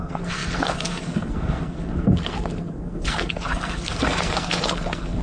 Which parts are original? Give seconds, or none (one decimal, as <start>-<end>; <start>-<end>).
none